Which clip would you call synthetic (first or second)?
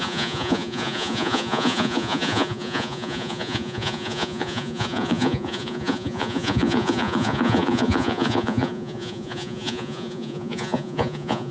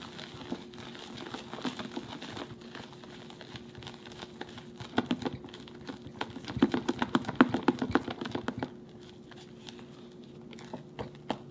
first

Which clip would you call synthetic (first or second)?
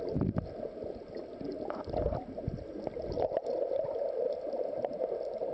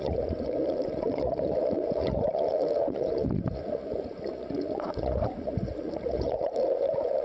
second